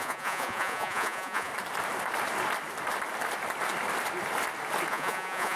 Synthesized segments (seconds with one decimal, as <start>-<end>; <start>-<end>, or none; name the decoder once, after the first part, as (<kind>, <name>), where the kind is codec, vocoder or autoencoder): 0.0-1.5 (vocoder, Vocos); 4.9-5.6